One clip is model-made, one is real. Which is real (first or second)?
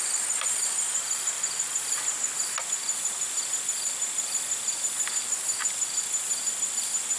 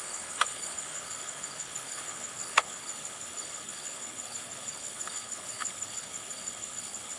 first